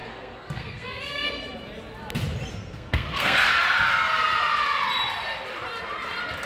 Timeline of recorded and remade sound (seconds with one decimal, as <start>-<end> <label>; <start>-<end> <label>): 0.0-1.3 remade; 1.3-2.5 recorded; 2.5-3.5 remade; 3.5-6.5 recorded